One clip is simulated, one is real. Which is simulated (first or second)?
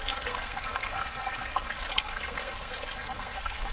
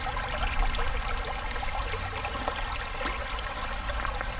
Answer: first